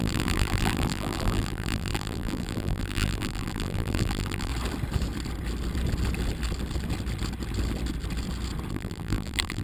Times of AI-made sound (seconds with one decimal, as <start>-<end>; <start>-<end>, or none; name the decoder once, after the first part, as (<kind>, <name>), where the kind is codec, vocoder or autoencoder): 0.0-4.5 (vocoder, BigVGAN v2); 8.7-9.6